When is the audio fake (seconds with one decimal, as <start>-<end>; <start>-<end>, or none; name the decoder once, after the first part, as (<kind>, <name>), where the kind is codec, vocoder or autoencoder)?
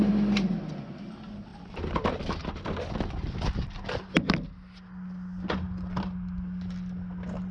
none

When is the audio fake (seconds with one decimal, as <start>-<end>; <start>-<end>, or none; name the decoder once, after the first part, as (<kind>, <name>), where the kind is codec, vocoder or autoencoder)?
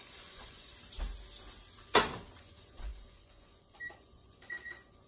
0.0-0.7 (vocoder, Vocos); 2.4-5.1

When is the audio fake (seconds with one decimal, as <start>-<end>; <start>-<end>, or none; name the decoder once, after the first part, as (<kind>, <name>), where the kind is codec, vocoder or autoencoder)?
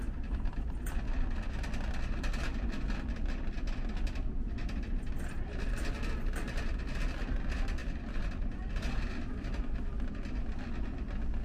none